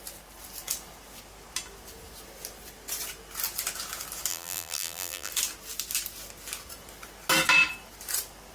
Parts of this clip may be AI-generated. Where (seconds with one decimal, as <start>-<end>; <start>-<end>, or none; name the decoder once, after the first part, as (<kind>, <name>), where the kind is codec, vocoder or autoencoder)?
4.3-5.3 (vocoder, BigVGAN v2)